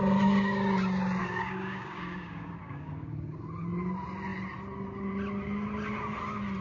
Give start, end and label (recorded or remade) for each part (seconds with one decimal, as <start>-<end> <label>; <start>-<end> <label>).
0.0-1.2 recorded; 1.2-3.4 remade; 3.4-6.6 recorded